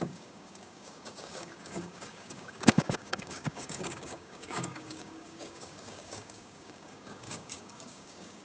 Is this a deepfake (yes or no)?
yes